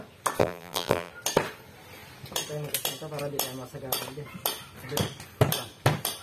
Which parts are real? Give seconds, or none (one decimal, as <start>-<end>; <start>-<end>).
0.0-0.4; 1.1-6.2